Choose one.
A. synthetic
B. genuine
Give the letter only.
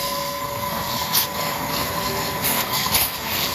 A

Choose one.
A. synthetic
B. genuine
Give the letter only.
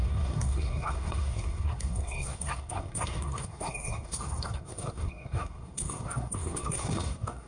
A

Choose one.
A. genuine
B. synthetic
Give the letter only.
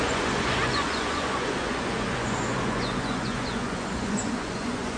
B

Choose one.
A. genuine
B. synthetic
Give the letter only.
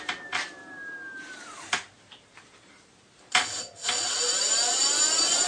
B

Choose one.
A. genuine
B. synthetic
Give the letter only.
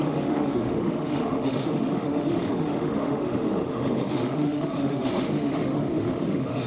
B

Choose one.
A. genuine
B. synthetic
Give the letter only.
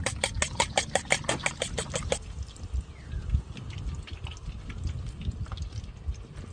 A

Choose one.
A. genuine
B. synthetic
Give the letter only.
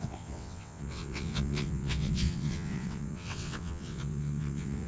B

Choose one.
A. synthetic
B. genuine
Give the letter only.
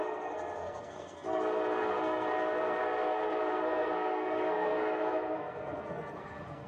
A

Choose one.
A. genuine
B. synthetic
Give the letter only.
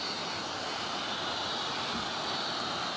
A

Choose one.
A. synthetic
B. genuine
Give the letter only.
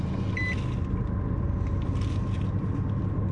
B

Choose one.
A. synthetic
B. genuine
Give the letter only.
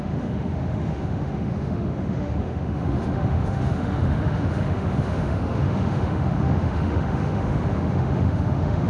A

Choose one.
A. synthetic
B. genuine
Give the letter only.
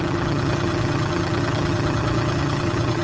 A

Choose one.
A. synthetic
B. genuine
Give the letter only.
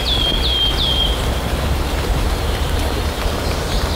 B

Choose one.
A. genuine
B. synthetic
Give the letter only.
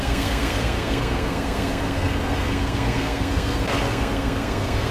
B